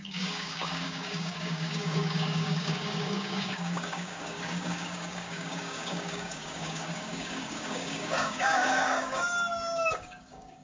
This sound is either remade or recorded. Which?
remade